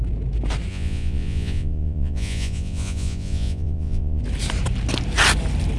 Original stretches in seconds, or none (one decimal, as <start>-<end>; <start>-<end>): 0.0-0.7; 4.2-5.8